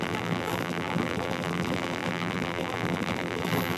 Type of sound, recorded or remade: remade